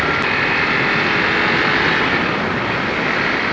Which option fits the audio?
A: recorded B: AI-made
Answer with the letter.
A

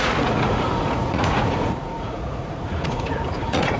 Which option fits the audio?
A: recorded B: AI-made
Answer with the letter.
B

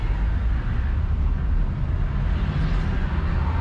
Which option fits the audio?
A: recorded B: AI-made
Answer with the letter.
A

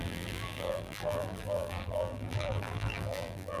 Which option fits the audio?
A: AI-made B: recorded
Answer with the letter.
A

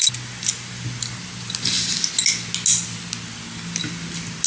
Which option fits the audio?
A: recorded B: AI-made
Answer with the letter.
A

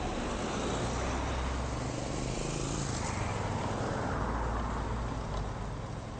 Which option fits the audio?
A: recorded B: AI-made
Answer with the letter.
A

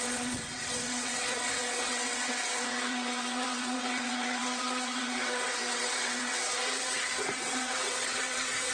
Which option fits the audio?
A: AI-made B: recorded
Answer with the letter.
A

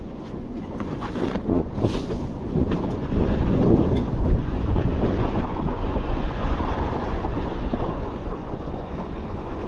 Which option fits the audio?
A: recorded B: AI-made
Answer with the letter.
B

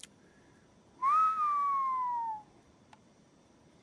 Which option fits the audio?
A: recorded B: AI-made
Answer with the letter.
A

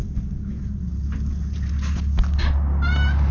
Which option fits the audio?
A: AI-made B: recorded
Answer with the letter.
B